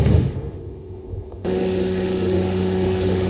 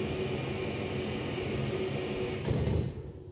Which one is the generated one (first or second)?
first